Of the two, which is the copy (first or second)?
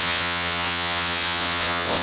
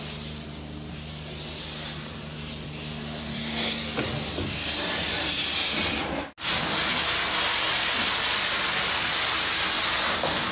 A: first